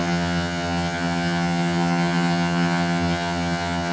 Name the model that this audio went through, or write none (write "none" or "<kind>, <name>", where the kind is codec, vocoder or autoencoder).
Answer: vocoder, HiFi-GAN